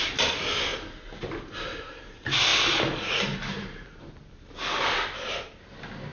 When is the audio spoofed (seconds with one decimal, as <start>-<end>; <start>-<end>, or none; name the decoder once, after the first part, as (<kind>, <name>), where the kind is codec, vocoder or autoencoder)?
none